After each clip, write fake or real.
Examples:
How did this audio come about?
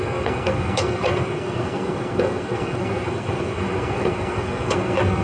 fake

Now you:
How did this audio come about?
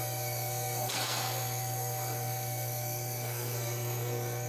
fake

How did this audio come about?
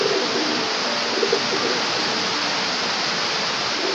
real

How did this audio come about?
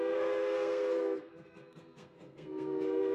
fake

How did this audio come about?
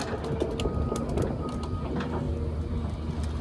real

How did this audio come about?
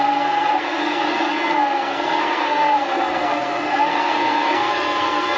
fake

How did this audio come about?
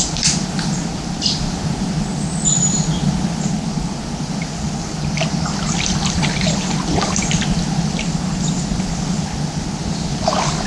real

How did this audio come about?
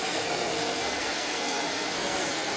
fake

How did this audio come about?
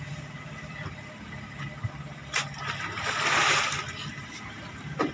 real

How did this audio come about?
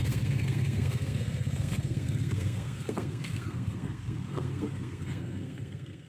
fake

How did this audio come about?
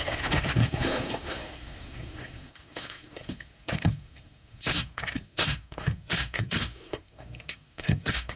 fake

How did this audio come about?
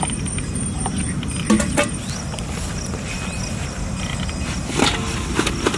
real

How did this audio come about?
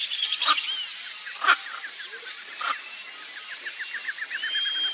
real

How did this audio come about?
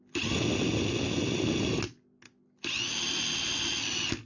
real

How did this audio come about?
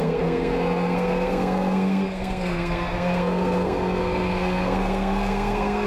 fake